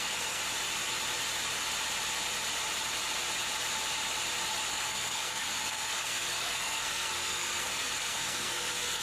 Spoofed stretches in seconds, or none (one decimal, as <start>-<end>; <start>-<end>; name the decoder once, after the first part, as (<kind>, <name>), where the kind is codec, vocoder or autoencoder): 0.0-0.4 (codec, SNAC); 4.7-9.0